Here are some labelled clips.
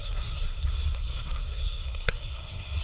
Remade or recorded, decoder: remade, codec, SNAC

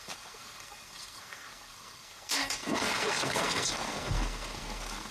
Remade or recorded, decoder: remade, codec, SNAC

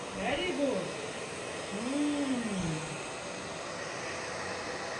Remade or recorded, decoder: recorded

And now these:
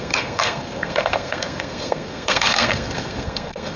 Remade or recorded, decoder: remade, codec, SNAC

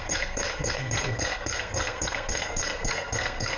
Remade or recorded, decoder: remade, codec, SNAC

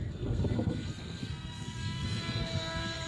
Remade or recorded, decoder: remade, codec, SNAC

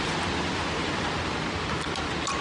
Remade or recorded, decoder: recorded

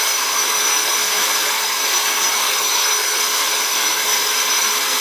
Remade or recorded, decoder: remade, codec, SNAC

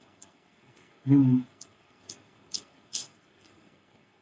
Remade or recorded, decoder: remade, codec, SNAC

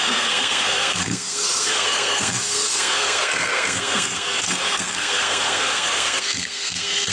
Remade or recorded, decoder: remade, codec, SNAC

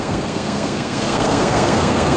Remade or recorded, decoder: remade, codec, SNAC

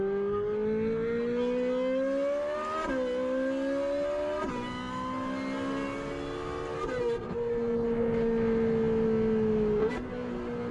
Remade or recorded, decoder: recorded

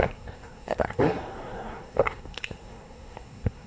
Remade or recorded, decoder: remade, codec, SNAC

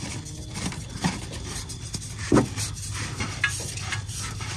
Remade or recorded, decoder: recorded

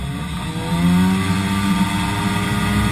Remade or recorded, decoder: recorded